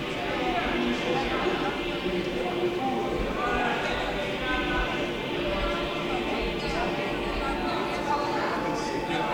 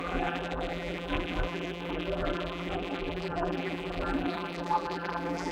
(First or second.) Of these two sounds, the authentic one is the first